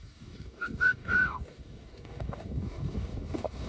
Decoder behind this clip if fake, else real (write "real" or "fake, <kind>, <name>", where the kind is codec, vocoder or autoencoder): fake, codec, DAC